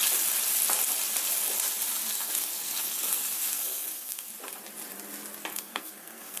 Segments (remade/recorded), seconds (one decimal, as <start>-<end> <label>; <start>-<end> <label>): 0.0-2.1 recorded; 2.1-4.3 remade; 4.3-5.5 recorded; 5.5-6.4 remade